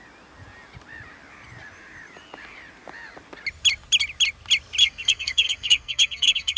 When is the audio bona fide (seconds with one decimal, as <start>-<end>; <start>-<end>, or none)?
0.0-4.8